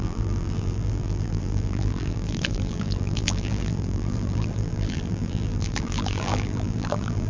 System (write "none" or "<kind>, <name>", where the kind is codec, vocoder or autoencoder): vocoder, BigVGAN v2